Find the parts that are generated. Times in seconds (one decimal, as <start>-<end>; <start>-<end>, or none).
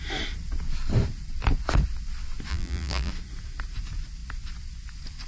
2.5-3.1